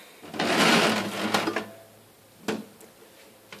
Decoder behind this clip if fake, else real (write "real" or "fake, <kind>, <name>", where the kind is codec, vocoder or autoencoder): real